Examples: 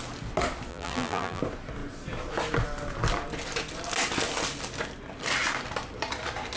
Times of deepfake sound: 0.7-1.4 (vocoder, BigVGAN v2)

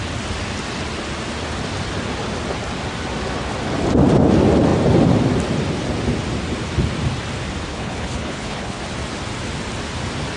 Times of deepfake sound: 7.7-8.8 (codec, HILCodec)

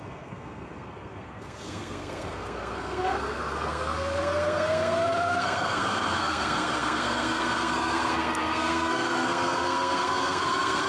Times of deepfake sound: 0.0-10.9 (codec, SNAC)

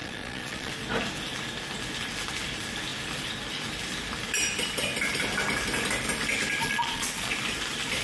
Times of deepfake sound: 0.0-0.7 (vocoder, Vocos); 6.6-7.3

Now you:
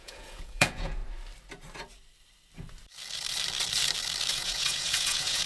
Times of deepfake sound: 0.0-1.0 (vocoder, Vocos); 4.3-5.5

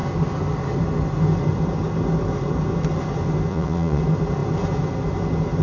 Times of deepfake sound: 3.5-4.0 (vocoder, Vocos)

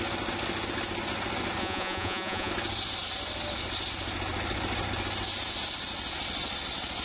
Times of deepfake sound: 1.6-2.5 (vocoder, Vocos)

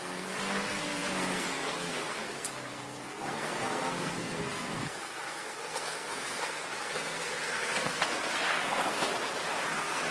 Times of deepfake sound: 0.0-9.1 (codec, SNAC); 9.7-10.1